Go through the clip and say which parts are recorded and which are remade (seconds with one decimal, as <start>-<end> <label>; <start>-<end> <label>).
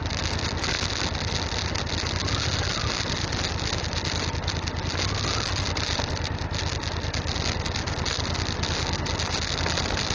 0.0-10.1 recorded